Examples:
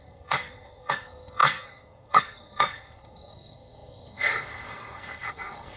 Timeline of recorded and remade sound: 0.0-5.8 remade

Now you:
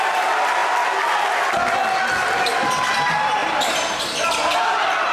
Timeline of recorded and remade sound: 0.0-5.1 recorded

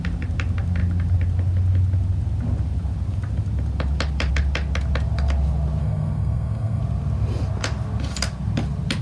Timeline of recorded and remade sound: 0.0-5.8 recorded; 5.8-6.8 remade; 6.8-9.0 recorded

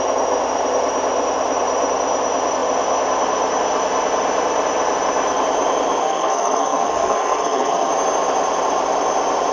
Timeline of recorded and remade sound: 0.0-6.0 recorded; 6.0-7.9 remade; 7.9-9.5 recorded

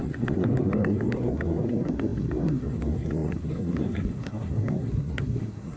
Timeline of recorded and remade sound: 0.0-5.8 remade